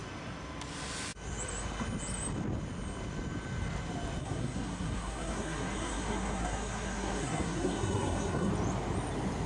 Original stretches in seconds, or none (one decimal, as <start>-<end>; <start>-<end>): 0.0-4.2; 8.5-9.5